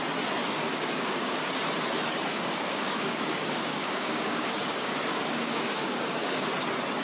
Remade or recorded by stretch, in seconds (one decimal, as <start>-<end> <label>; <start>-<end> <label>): 0.0-0.4 recorded; 0.4-1.4 remade; 1.4-2.3 recorded; 2.3-6.5 remade; 6.5-7.0 recorded